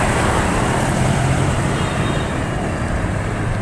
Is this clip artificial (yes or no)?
yes